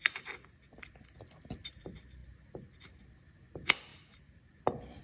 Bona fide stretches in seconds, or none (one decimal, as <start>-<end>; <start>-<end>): 0.0-5.0